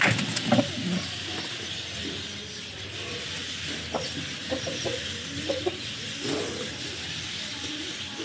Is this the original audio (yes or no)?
yes